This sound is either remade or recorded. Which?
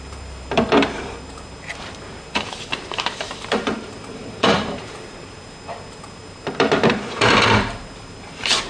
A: remade